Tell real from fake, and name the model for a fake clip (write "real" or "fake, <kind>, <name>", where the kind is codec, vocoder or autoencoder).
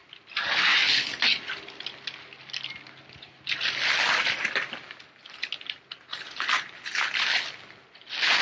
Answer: real